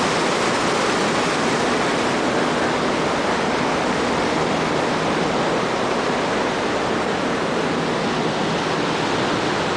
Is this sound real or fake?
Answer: real